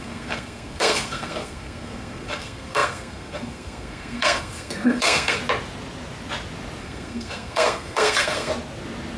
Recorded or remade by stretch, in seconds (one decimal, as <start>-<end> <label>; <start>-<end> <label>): 0.0-5.4 remade; 5.4-6.8 recorded; 6.8-8.5 remade; 8.5-9.2 recorded